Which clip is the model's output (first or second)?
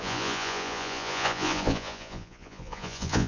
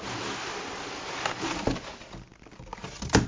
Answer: first